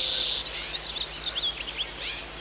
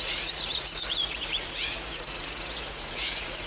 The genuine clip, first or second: first